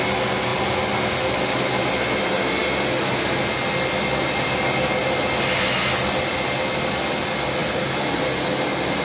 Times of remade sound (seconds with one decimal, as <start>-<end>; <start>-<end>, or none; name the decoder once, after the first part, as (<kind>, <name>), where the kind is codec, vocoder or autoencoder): 7.6-8.2 (vocoder, BigVGAN v2)